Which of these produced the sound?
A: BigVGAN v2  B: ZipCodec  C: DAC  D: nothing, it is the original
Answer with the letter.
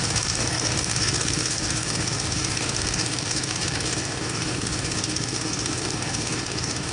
C